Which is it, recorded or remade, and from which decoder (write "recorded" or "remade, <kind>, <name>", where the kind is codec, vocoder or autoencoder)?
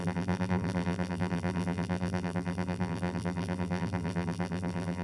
remade, vocoder, BigVGAN v2